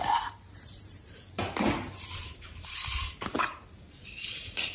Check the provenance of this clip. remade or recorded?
remade